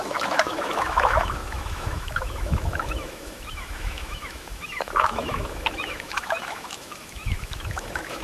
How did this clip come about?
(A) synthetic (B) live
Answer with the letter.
A